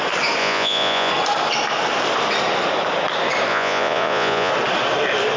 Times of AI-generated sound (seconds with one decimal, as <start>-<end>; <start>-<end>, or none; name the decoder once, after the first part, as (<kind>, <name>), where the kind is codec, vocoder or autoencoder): 0.4-1.1 (vocoder, Vocos); 3.5-4.5